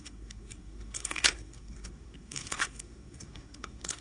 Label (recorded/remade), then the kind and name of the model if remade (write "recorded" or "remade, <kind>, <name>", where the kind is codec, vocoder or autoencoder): remade, codec, SNAC